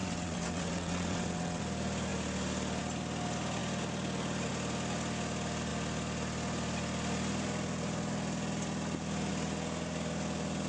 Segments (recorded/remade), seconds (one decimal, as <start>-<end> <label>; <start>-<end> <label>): 0.0-1.6 remade; 1.6-10.7 recorded